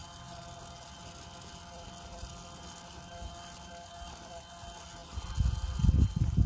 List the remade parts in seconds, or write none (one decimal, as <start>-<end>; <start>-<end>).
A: none

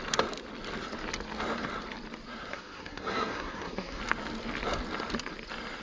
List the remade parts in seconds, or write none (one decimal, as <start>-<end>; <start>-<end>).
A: 2.5-4.0

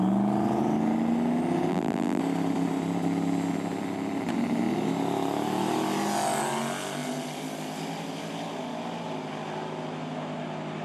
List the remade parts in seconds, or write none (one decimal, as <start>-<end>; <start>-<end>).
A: 1.7-2.2

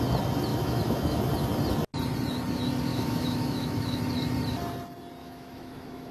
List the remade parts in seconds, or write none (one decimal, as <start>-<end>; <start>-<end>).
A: 0.5-1.3; 2.9-4.0; 5.2-6.1

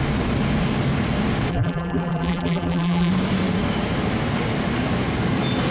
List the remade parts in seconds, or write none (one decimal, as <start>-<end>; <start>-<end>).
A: 1.5-3.1

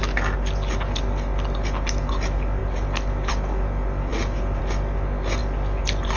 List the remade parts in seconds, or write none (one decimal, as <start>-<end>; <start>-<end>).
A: none